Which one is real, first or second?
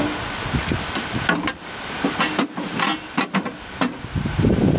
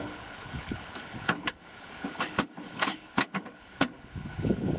first